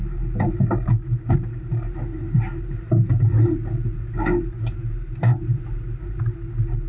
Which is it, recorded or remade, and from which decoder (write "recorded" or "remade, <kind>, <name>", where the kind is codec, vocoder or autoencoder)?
recorded